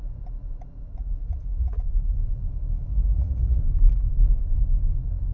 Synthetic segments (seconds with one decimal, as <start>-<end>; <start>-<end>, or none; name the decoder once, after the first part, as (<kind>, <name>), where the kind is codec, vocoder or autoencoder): 0.9-2.2 (vocoder, Vocos); 2.9-3.6